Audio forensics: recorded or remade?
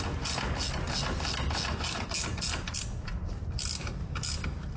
recorded